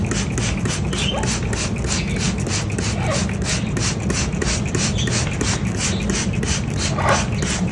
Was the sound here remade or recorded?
recorded